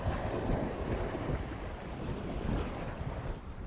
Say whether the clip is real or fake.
real